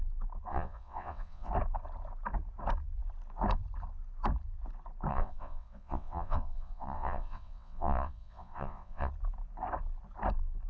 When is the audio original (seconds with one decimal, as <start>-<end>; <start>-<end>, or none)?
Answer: 0.0-0.5; 1.5-5.1; 9.1-10.7